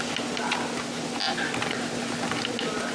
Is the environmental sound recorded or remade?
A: recorded